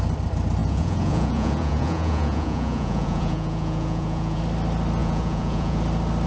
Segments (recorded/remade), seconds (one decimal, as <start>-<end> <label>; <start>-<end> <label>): 0.0-0.6 recorded; 0.6-4.4 remade; 4.4-5.0 recorded; 5.0-5.8 remade; 5.8-6.3 recorded